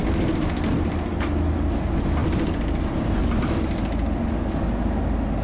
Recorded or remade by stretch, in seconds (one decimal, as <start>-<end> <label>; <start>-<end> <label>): 0.0-5.4 recorded